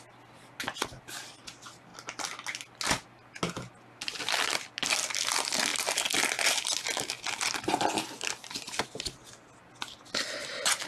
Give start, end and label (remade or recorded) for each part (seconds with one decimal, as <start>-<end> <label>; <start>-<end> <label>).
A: 0.0-10.9 recorded